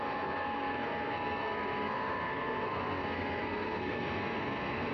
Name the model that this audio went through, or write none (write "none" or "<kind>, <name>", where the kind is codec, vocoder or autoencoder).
codec, SNAC